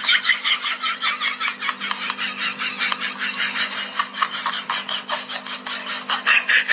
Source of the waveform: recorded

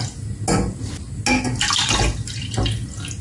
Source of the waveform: recorded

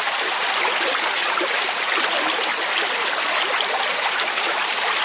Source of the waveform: recorded